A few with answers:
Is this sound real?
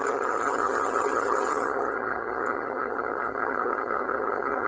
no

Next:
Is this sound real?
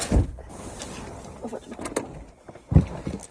yes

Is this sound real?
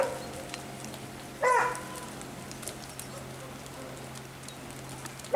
yes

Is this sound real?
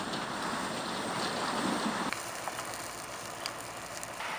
yes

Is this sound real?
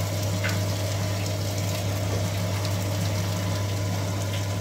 yes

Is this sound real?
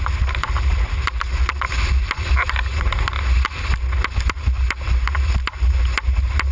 yes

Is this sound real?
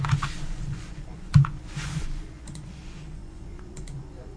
no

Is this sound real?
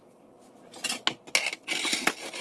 yes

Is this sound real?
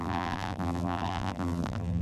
no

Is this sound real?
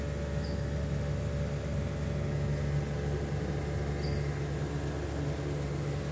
yes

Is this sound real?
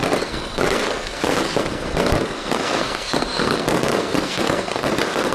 no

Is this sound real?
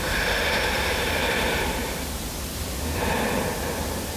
no